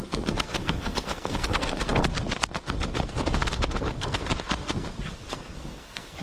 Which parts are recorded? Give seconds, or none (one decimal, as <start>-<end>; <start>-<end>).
none